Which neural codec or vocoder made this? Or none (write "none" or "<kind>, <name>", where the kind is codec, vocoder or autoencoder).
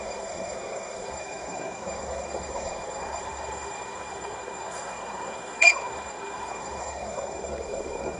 codec, SNAC